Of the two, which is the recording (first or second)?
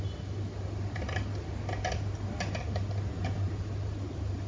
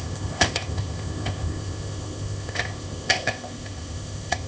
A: first